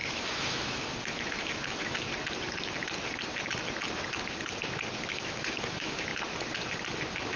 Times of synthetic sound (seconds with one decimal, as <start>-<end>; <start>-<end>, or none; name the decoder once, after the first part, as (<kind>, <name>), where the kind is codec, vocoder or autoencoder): 0.0-2.1 (autoencoder, DAC-VAE); 5.0-6.1